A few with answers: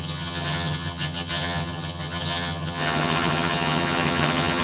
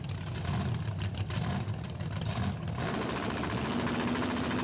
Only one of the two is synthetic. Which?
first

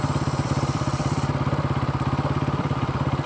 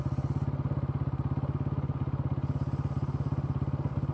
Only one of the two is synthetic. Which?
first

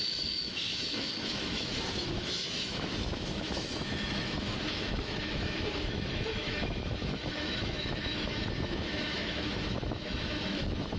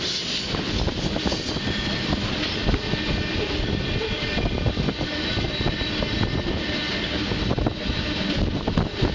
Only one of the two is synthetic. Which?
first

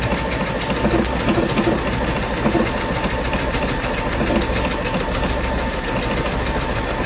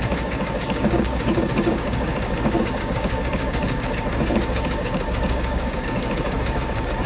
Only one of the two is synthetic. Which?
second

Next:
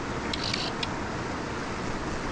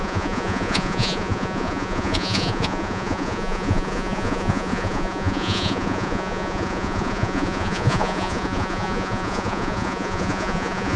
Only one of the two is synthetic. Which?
second